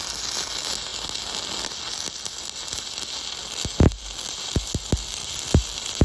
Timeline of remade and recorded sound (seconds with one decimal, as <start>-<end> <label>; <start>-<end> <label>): 0.0-6.0 recorded